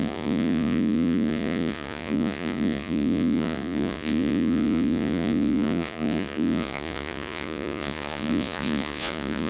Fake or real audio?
fake